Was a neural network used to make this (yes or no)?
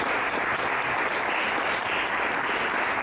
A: no